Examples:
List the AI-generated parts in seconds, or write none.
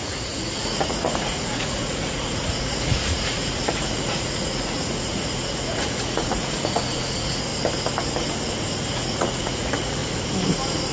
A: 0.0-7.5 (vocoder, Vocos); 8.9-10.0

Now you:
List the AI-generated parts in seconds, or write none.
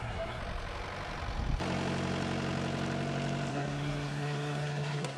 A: 0.0-0.4 (codec, SNAC); 3.5-5.2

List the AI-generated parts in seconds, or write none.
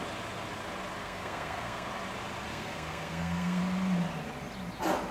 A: 1.0-1.9 (codec, SNAC); 2.5-3.6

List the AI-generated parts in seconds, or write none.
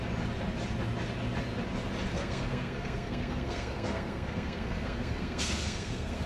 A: 2.1-6.3 (codec, SNAC)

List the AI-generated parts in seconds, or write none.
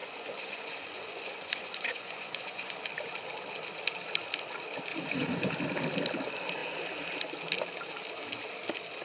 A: 0.0-2.8 (vocoder, Vocos); 4.9-5.5